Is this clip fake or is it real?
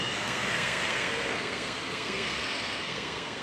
fake